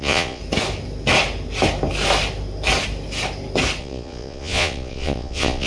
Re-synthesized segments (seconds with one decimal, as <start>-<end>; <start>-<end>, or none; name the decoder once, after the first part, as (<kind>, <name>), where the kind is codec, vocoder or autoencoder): 0.0-0.4 (vocoder, Vocos); 3.8-5.7